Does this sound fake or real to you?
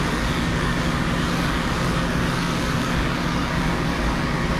fake